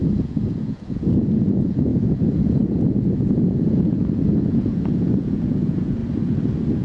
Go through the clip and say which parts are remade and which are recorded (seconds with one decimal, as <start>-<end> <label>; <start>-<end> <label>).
0.0-6.0 remade; 6.0-6.8 recorded